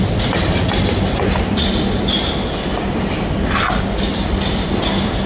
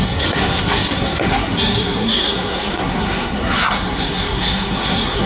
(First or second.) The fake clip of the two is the second